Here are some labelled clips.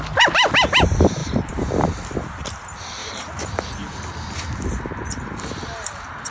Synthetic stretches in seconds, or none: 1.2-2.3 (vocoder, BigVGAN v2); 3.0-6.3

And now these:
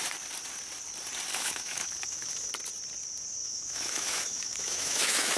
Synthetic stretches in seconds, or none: 1.3-2.5 (autoencoder, DAC-VAE); 3.4-5.4